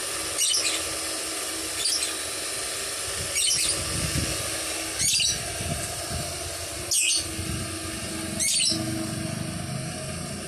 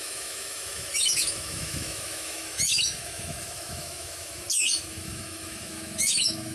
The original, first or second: first